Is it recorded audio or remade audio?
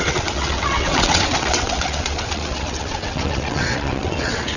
remade